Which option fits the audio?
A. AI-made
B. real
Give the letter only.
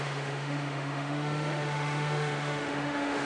A